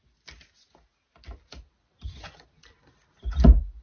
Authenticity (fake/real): real